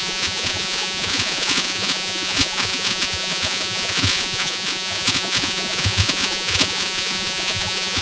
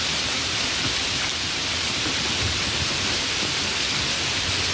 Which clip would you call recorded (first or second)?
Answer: second